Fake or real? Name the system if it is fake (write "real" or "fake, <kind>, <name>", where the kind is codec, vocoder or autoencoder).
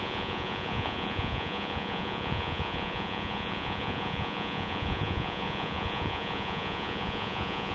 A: fake, vocoder, Vocos